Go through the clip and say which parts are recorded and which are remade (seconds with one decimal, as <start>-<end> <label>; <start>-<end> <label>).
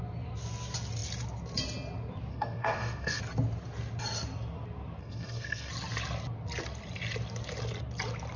0.0-2.3 recorded; 2.3-3.2 remade; 3.2-5.0 recorded; 5.0-5.7 remade; 5.7-8.4 recorded